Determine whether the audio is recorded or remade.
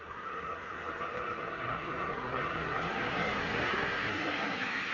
remade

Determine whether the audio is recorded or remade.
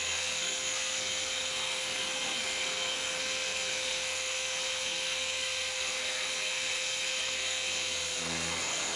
remade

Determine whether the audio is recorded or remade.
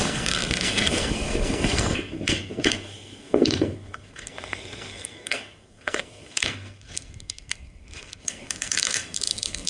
remade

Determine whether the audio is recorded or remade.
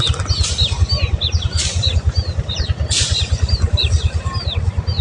recorded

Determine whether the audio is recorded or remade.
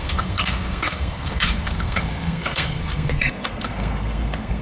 remade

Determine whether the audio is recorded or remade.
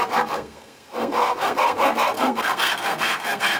remade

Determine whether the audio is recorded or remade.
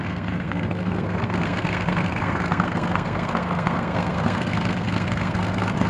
remade